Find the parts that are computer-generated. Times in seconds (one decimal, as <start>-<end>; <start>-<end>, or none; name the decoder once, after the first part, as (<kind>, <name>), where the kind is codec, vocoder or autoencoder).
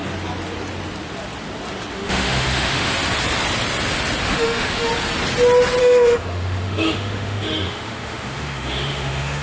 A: 1.9-2.9 (autoencoder, DAC-VAE); 4.3-4.9; 5.8-9.4